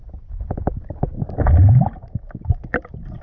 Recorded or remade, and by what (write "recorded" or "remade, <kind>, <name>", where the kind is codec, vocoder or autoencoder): recorded